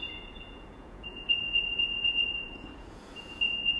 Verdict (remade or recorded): remade